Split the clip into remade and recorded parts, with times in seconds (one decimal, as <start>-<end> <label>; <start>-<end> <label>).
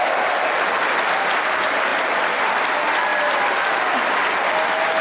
0.0-1.9 recorded; 1.9-2.7 remade; 2.7-5.0 recorded